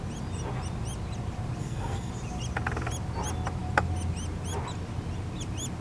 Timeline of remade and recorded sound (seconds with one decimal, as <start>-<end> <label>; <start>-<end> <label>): 0.0-1.6 recorded; 1.6-2.1 remade; 2.1-5.8 recorded

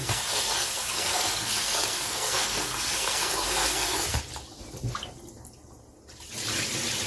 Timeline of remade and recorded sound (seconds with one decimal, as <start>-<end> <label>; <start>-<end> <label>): 0.0-4.2 remade; 4.2-7.1 recorded

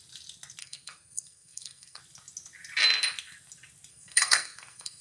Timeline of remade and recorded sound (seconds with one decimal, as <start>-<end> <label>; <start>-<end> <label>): 0.0-0.6 recorded; 0.6-2.0 remade; 2.0-3.9 recorded; 3.9-5.0 remade